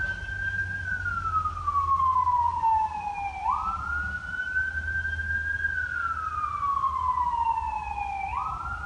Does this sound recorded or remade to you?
recorded